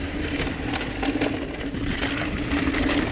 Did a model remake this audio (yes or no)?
no